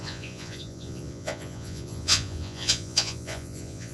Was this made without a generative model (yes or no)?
no